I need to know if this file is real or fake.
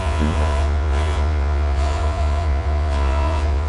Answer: fake